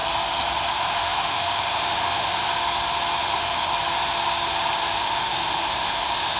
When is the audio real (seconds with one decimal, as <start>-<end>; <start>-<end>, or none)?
0.0-0.7; 2.5-3.2; 3.7-5.0